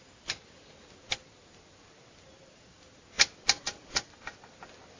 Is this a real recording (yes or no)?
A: yes